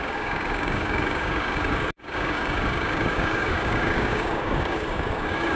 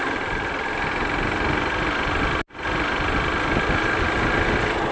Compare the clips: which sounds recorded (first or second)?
second